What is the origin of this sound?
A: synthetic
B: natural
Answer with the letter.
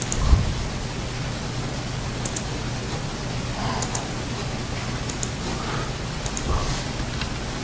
B